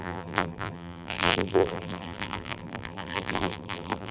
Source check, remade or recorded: remade